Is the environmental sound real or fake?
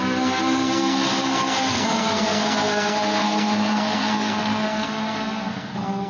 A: fake